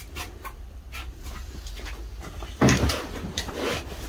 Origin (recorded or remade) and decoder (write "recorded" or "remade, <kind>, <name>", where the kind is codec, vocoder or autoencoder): recorded